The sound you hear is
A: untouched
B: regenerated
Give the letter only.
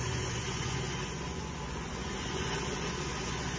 B